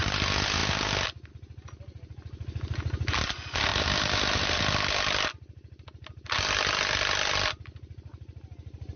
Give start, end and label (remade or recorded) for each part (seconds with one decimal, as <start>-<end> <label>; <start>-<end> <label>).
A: 0.0-3.7 recorded; 3.7-4.6 remade; 4.6-9.0 recorded